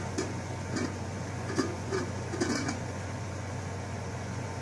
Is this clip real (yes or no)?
no